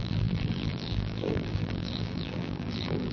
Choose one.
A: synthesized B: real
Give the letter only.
A